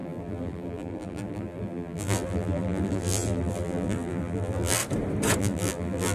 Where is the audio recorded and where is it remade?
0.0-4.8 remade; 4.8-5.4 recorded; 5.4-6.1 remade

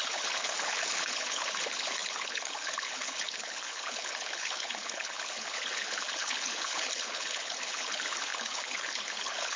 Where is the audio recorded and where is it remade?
0.0-9.6 remade

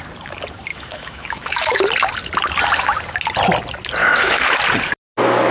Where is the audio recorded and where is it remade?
0.0-0.7 recorded; 0.7-1.8 remade; 1.8-4.0 recorded; 4.0-4.6 remade; 4.6-5.5 recorded

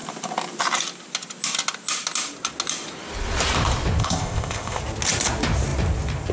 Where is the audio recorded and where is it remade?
0.0-4.0 recorded; 4.0-4.8 remade; 4.8-6.3 recorded

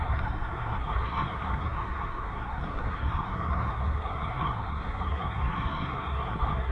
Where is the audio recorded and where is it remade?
0.0-6.7 remade